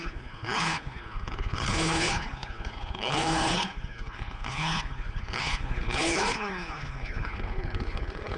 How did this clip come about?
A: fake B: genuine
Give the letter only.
A